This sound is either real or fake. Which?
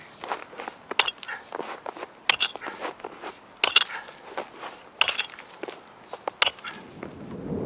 real